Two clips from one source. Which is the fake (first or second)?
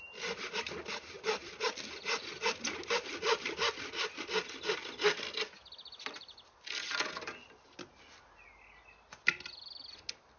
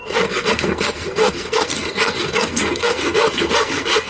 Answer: second